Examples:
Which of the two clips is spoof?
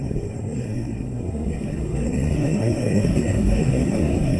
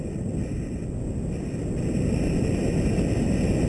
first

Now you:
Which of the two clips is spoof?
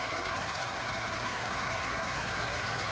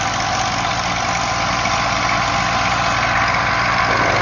first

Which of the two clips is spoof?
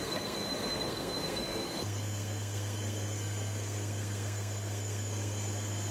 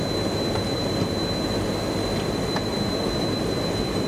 first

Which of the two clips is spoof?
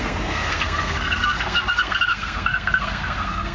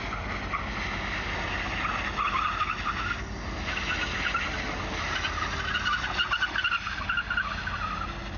first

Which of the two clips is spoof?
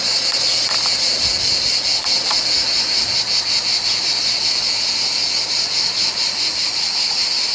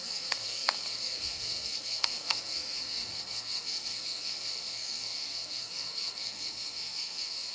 second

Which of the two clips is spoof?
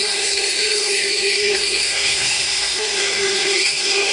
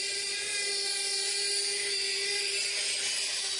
first